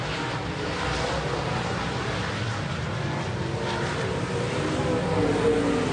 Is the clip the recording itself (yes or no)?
yes